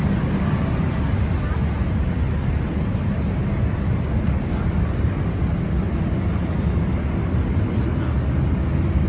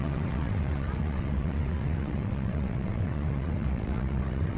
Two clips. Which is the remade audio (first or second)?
second